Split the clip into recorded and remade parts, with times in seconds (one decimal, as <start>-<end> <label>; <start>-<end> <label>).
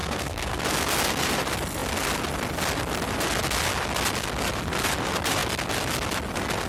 0.0-0.6 remade; 0.6-6.7 recorded